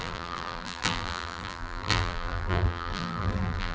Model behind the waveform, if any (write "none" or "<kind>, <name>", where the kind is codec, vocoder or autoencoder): vocoder, BigVGAN v2